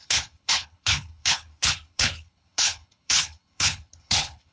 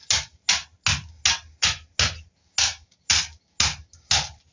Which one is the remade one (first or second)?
first